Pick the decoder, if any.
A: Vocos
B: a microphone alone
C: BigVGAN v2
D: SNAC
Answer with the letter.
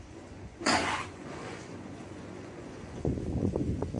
A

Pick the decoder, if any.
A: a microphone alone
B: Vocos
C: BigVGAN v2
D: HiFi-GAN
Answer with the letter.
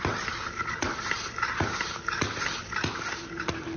A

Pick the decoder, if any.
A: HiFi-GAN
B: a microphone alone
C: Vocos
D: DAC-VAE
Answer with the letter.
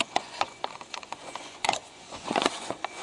C